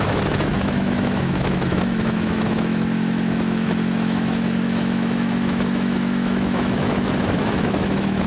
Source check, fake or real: fake